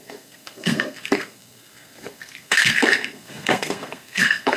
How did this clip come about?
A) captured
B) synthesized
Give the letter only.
B